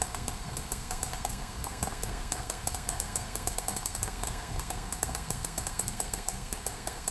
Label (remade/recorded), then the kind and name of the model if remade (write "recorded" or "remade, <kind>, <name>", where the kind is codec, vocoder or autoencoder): remade, codec, SNAC